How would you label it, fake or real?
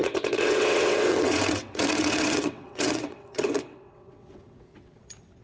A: fake